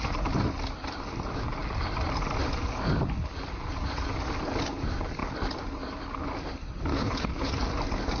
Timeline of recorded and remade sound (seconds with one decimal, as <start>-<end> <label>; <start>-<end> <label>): 0.0-6.9 recorded; 6.9-7.5 remade; 7.5-8.2 recorded